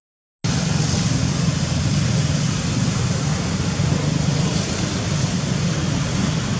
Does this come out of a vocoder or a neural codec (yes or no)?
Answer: no